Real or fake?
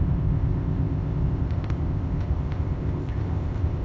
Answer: fake